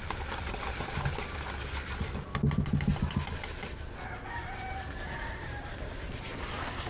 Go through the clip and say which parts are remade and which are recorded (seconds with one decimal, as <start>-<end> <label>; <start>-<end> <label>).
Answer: 0.0-4.4 recorded; 4.4-6.9 remade